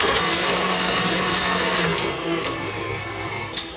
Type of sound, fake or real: fake